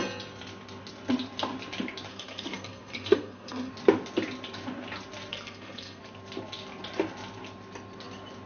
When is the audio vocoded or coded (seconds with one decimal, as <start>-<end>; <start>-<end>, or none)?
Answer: 2.1-3.7; 5.3-6.0